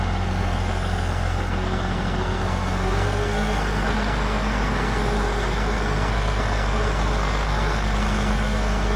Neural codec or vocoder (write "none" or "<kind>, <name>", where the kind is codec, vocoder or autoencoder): codec, SNAC